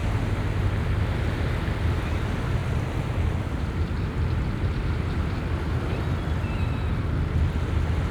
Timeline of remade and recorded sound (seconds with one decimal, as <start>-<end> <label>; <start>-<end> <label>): 0.0-2.6 recorded; 2.6-5.6 remade; 5.6-8.1 recorded